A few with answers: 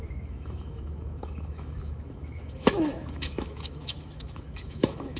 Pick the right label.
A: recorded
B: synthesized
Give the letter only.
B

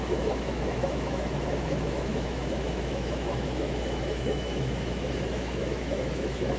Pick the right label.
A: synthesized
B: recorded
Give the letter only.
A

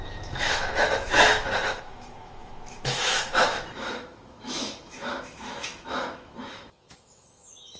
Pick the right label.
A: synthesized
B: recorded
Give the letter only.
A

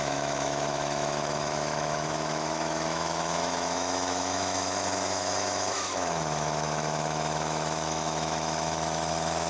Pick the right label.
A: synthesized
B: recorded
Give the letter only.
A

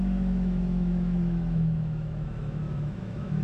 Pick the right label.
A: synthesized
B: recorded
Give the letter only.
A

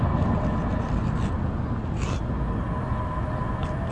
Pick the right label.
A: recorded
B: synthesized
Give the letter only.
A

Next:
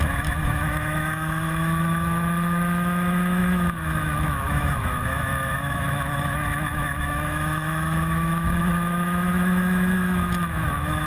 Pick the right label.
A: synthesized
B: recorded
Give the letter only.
A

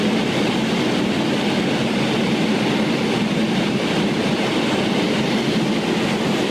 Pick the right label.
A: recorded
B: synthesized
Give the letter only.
A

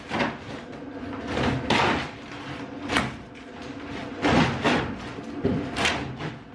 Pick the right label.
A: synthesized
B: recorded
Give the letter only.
B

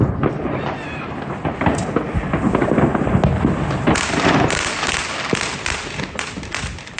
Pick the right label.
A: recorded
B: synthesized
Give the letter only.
A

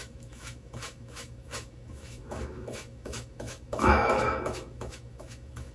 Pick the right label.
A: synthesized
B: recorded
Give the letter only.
A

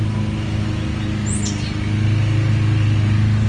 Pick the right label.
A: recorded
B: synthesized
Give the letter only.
A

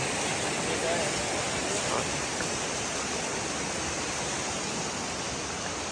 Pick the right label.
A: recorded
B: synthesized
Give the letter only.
A